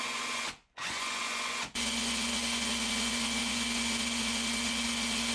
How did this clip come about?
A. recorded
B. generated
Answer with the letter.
B